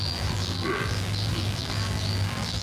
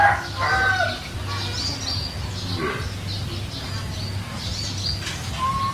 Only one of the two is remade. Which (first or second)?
first